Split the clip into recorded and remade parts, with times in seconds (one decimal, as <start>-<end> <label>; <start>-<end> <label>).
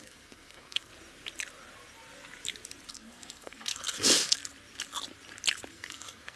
0.0-0.9 remade; 0.9-2.9 recorded; 2.9-4.4 remade; 4.4-5.7 recorded; 5.7-6.4 remade